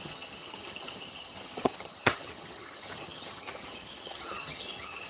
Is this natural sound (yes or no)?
no